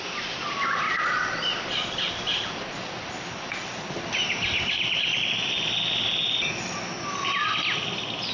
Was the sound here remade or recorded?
recorded